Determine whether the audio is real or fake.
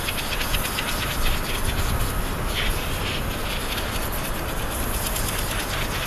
real